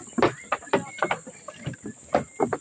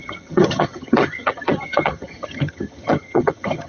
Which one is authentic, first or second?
first